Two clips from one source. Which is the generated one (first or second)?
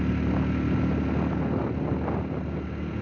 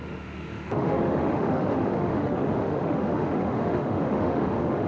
second